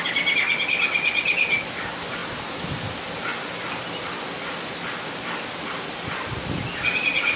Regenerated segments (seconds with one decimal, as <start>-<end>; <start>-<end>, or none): none